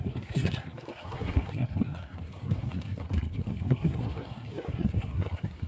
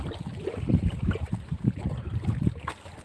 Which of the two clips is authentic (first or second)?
second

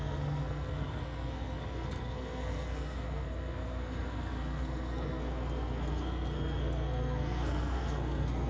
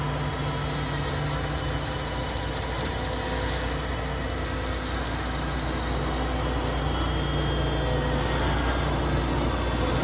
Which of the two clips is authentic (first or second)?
second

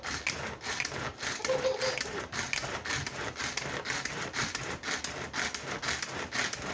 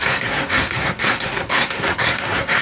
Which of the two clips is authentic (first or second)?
first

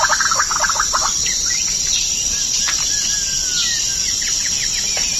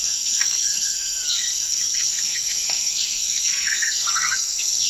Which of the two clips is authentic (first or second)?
first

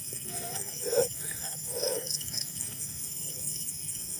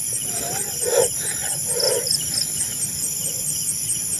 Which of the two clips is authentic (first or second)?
second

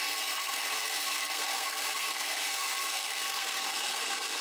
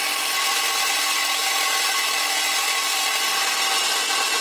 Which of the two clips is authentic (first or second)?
second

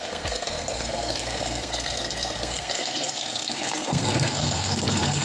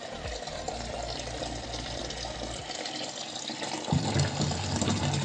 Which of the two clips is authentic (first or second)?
second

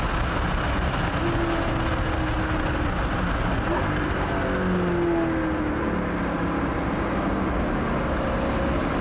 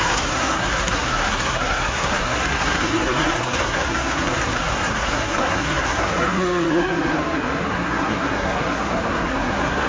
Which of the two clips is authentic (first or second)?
first